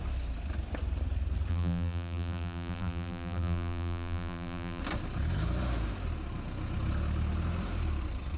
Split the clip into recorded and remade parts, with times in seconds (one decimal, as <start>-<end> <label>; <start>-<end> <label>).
0.0-1.5 recorded; 1.5-4.8 remade; 4.8-8.4 recorded